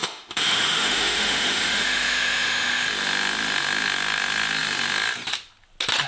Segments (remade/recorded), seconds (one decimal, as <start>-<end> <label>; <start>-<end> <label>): 0.0-2.9 remade; 2.9-6.1 recorded